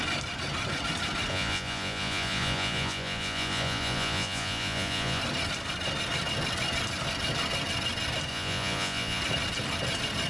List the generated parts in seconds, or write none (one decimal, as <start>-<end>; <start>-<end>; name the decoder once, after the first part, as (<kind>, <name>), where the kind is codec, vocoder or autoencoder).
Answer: 1.3-5.2 (vocoder, Vocos); 8.3-9.2